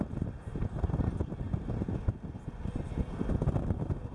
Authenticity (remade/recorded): recorded